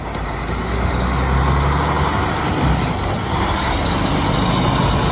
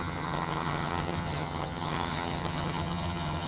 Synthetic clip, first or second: second